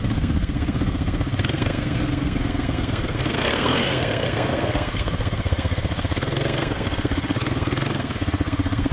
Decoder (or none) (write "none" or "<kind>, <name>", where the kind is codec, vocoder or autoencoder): codec, SNAC